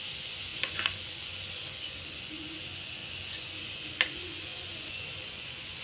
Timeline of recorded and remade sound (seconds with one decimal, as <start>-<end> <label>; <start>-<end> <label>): 0.0-5.8 remade